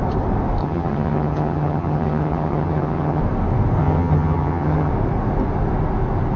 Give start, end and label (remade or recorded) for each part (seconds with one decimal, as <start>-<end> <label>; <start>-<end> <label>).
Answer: 0.0-0.6 recorded; 0.6-3.2 remade; 3.2-3.8 recorded; 3.8-4.9 remade; 4.9-6.4 recorded